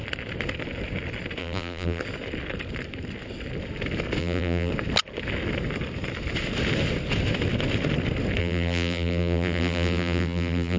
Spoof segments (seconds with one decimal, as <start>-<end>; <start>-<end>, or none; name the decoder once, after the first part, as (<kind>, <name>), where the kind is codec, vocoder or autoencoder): 1.4-2.0 (vocoder, BigVGAN v2); 4.2-4.7; 8.4-10.8